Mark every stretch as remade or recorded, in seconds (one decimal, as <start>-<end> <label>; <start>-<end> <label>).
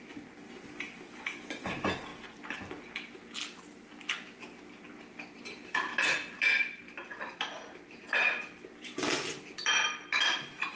0.0-2.1 remade; 2.1-4.9 recorded; 4.9-10.8 remade